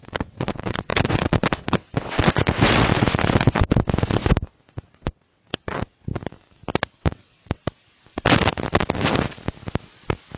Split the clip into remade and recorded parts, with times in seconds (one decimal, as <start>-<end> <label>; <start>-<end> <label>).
0.0-4.2 remade; 4.2-4.8 recorded; 4.8-6.1 remade; 6.1-7.0 recorded; 7.0-7.6 remade; 7.6-10.4 recorded